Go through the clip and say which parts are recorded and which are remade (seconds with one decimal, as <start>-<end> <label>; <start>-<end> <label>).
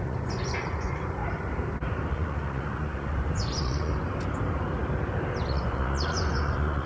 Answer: 0.0-1.2 remade; 1.2-2.1 recorded; 2.1-3.9 remade; 3.9-5.4 recorded; 5.4-6.9 remade